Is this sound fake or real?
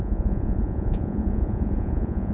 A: fake